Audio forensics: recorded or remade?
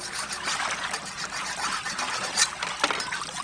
recorded